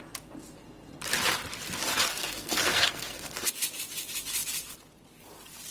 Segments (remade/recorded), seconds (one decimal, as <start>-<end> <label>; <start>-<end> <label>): 0.0-2.1 recorded; 2.1-3.5 remade; 3.5-5.7 recorded